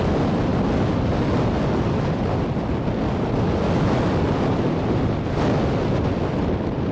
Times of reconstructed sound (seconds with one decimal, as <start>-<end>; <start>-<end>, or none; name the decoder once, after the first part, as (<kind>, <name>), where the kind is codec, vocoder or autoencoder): none